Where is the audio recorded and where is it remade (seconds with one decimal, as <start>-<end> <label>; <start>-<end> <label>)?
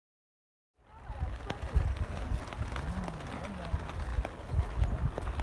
0.0-1.9 recorded; 1.9-2.4 remade; 2.4-5.4 recorded